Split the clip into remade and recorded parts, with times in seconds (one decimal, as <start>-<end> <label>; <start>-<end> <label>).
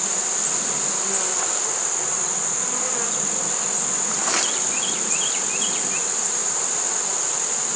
0.0-7.8 recorded